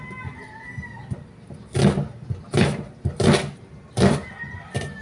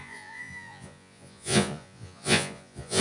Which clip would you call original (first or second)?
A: first